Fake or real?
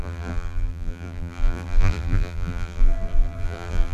fake